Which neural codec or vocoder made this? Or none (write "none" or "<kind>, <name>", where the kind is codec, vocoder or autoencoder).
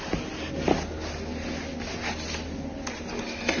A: none